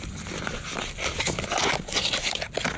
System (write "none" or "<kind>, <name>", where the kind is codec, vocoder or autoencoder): vocoder, BigVGAN v2